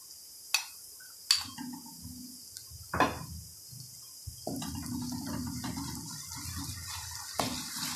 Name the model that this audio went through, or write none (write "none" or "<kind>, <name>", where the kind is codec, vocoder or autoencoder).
none